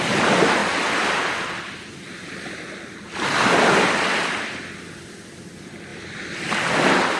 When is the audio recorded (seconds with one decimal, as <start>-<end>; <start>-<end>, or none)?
0.0-7.2